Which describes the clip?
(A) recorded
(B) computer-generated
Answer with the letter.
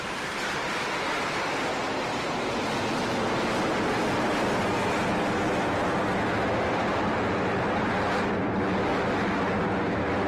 A